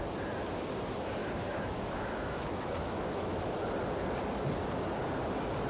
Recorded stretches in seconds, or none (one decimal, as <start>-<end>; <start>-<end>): 0.0-1.2; 3.4-5.7